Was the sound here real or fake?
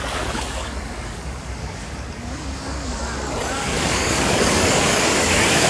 fake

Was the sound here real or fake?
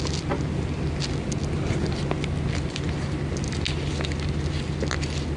real